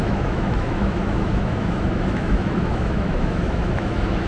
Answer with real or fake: fake